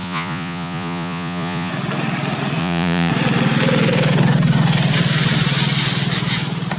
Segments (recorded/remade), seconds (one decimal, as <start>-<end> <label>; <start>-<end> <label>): 0.0-1.7 remade; 1.7-2.6 recorded; 2.6-3.1 remade; 3.1-6.8 recorded